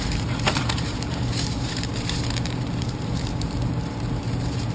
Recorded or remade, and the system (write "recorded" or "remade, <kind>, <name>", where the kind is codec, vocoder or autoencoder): remade, vocoder, BigVGAN v2